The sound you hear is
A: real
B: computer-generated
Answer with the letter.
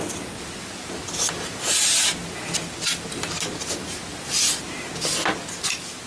A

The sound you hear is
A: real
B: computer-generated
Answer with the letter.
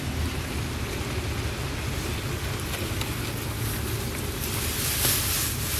A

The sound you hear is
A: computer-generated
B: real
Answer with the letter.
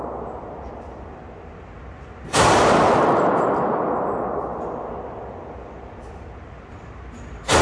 B